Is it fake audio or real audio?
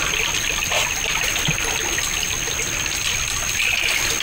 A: real